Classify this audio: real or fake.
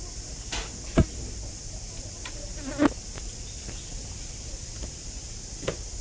real